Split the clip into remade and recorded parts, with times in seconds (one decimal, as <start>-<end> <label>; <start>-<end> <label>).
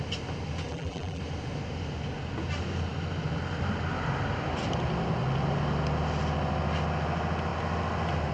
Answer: 0.0-0.7 recorded; 0.7-1.2 remade; 1.2-8.3 recorded